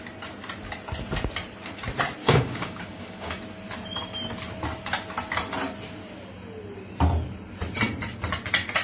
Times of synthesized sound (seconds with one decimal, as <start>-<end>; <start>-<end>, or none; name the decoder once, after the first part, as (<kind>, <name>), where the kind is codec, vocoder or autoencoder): 2.2-3.4 (codec, DAC)